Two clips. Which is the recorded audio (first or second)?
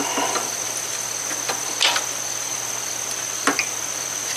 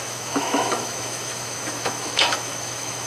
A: first